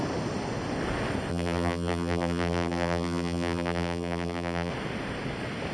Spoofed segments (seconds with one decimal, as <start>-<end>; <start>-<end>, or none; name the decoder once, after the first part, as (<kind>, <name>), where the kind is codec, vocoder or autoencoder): 1.3-4.7 (vocoder, BigVGAN v2)